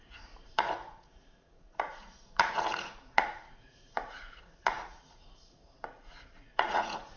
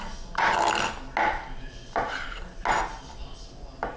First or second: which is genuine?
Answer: second